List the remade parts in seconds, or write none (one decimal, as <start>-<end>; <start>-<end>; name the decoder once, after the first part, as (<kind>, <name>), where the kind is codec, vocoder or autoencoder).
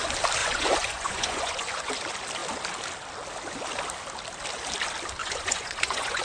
0.4-1.9 (vocoder, Vocos); 5.2-6.2